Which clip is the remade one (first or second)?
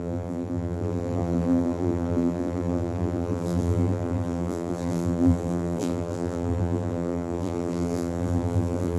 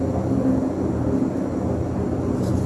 first